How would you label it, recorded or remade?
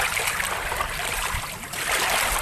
recorded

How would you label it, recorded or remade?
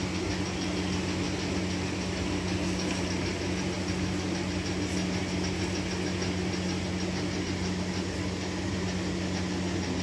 recorded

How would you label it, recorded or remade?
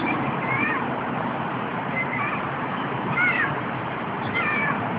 remade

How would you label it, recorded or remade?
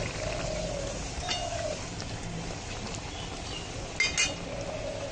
recorded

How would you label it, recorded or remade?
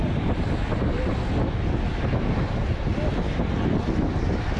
recorded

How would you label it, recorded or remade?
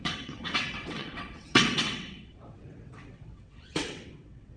remade